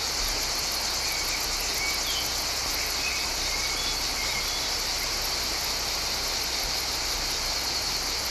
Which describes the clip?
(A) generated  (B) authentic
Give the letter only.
B